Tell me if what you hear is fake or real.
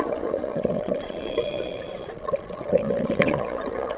fake